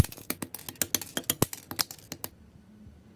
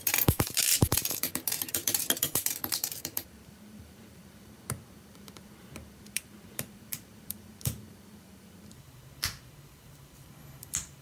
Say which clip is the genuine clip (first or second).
first